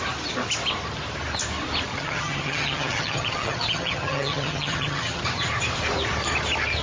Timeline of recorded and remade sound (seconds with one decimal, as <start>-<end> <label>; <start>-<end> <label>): 0.0-1.9 recorded; 1.9-5.2 remade; 5.2-6.8 recorded